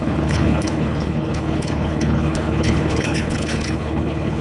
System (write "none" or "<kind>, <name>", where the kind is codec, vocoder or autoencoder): codec, HILCodec